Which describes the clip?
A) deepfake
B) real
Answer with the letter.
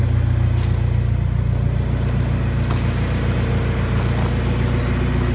B